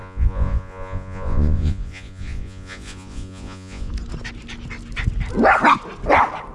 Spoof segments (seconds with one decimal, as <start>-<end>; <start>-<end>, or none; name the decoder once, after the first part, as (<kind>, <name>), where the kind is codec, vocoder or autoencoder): 0.0-3.9 (vocoder, Vocos)